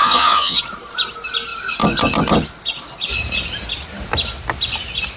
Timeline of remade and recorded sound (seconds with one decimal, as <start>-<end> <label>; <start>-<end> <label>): 0.0-0.6 remade; 0.6-5.2 recorded